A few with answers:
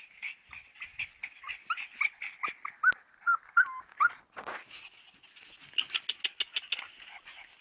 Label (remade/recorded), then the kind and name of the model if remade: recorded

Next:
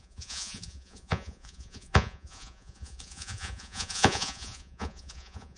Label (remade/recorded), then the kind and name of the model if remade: remade, vocoder, Vocos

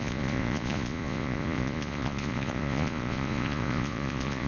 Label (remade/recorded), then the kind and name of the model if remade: remade, vocoder, Vocos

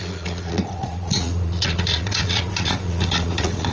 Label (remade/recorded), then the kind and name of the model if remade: remade, vocoder, Vocos